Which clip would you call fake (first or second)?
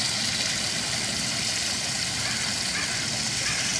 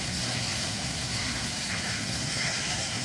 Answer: second